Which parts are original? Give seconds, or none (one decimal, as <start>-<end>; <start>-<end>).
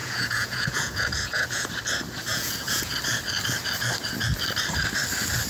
1.7-2.3; 2.9-5.5